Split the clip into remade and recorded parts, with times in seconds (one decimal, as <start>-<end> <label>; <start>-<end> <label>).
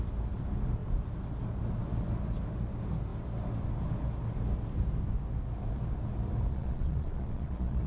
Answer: 0.0-6.5 recorded; 6.5-7.9 remade